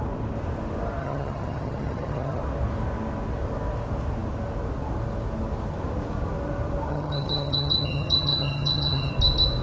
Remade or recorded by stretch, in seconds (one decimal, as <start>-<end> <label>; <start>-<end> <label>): 0.0-1.0 recorded; 1.0-2.4 remade; 2.4-6.9 recorded; 6.9-9.1 remade; 9.1-9.6 recorded